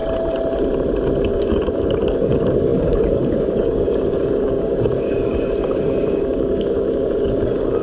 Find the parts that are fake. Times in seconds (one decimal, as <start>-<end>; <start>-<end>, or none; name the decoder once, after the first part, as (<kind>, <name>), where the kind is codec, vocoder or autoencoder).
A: 1.2-7.8 (codec, DAC)